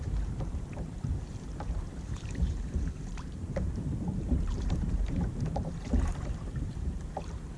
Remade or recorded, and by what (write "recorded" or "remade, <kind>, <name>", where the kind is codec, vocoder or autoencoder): remade, vocoder, BigVGAN v2